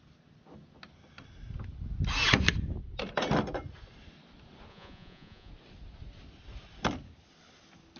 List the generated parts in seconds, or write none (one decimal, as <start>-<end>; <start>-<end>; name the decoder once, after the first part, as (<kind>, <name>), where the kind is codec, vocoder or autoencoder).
4.7-5.5 (vocoder, Vocos)